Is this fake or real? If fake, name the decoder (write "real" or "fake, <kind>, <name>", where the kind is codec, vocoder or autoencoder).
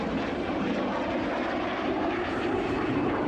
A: fake, vocoder, BigVGAN v2